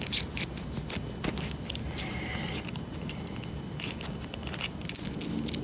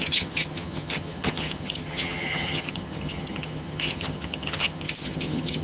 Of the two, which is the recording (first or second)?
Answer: first